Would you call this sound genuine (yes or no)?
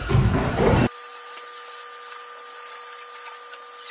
yes